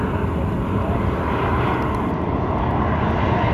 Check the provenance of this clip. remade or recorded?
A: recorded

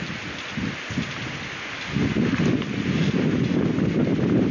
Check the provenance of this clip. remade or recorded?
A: recorded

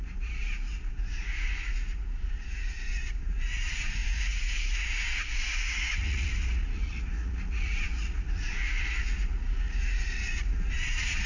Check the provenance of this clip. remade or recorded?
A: remade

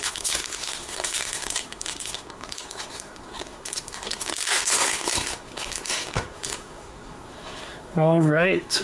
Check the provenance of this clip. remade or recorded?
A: remade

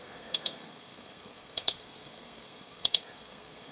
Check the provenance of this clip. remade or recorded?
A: remade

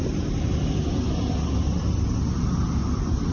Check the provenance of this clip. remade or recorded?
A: recorded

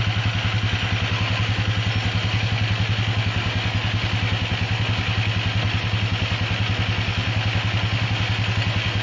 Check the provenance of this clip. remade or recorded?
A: recorded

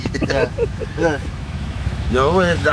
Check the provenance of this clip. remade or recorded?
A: remade